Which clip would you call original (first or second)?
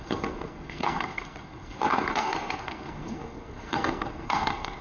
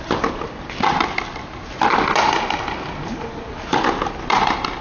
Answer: second